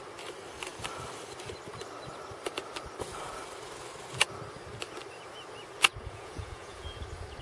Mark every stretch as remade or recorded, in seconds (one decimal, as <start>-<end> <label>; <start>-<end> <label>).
0.0-5.9 recorded; 5.9-7.0 remade; 7.0-7.4 recorded